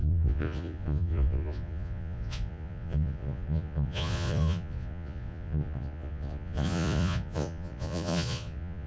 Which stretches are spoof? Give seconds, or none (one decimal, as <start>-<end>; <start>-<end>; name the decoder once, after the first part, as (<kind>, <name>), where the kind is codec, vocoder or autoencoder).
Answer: 0.0-8.9 (vocoder, Vocos)